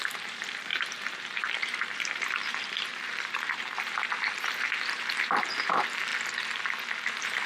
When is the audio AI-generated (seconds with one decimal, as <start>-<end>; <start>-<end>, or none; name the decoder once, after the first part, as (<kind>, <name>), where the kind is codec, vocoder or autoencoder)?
0.0-6.1 (vocoder, BigVGAN v2); 7.1-7.5